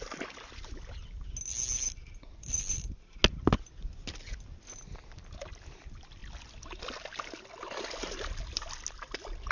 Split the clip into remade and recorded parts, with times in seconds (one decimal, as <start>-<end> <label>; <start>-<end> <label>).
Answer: 0.0-9.5 recorded